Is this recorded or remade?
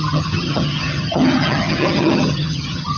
remade